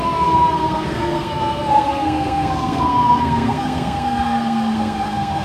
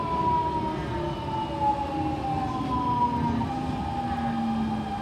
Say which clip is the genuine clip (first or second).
second